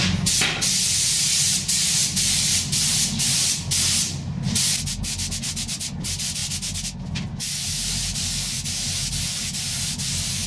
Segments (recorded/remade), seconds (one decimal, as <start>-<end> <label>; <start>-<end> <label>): 0.0-10.5 recorded